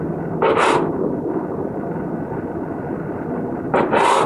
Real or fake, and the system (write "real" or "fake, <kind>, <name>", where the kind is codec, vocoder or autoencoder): real